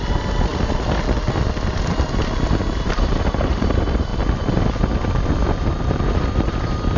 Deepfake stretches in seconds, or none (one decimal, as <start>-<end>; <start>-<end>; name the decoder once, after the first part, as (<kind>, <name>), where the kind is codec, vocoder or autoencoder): 0.0-0.5 (vocoder, BigVGAN v2); 3.0-4.1; 5.5-7.0